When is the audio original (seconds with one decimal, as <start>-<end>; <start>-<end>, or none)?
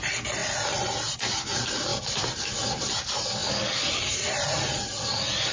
0.0-0.4; 1.1-1.9; 2.5-5.5